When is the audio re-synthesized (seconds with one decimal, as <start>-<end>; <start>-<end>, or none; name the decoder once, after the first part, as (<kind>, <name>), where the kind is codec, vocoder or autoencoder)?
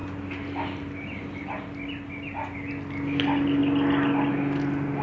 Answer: none